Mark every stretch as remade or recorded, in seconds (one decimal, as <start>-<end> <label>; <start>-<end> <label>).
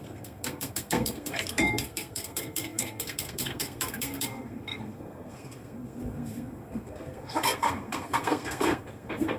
0.0-9.4 remade